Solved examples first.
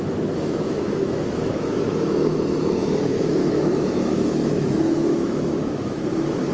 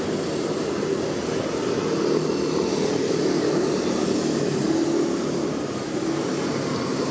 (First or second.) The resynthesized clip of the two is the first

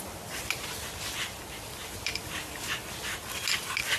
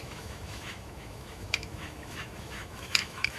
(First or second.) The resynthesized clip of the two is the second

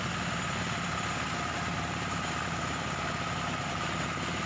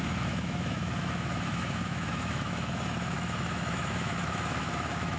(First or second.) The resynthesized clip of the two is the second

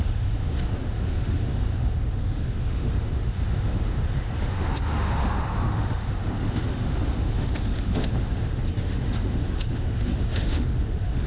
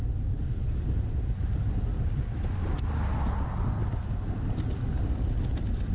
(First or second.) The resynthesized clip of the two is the first